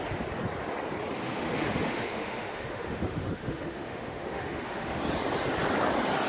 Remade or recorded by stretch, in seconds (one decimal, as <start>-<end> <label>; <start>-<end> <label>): 0.0-1.2 recorded; 1.2-5.0 remade; 5.0-6.3 recorded